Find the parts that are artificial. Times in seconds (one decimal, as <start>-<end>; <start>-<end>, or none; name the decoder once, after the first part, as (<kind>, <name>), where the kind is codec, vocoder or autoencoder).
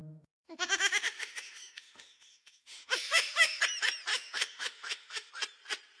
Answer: 0.0-3.6 (autoencoder, DAC-VAE); 4.1-5.3